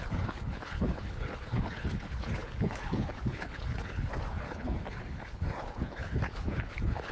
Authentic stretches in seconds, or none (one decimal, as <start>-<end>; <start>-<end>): none